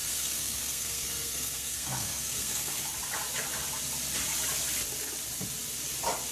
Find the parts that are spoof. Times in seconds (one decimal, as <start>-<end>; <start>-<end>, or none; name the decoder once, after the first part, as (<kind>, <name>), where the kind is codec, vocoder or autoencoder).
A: 0.0-2.7 (codec, SNAC)